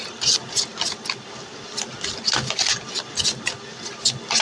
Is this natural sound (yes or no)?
yes